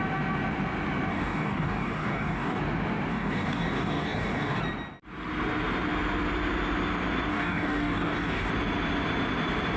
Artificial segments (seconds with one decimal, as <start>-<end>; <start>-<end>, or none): 1.1-2.6; 3.1-4.6; 7.3-8.5